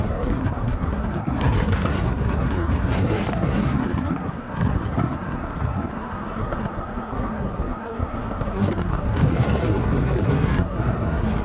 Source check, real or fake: fake